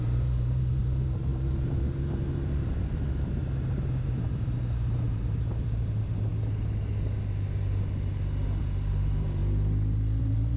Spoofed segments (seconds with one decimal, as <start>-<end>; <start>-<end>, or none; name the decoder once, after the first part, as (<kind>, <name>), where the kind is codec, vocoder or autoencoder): 0.0-6.3 (vocoder, BigVGAN v2); 8.6-9.4; 10.2-10.6